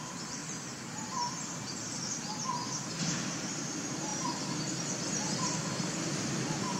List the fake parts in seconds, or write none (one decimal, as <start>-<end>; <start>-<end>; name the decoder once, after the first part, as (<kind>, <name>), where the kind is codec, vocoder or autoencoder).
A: 0.0-0.4 (vocoder, BigVGAN v2); 2.8-4.1; 6.2-6.8